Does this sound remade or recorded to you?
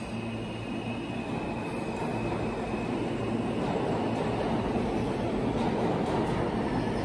recorded